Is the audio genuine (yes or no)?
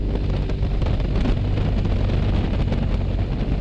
yes